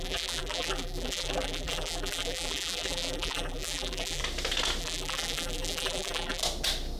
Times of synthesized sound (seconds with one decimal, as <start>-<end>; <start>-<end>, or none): 0.0-4.2; 4.8-6.4